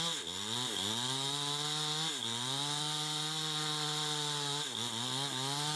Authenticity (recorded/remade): recorded